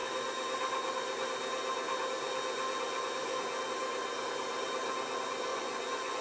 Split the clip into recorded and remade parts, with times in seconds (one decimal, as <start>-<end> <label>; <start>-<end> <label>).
0.0-5.5 recorded; 5.5-6.2 remade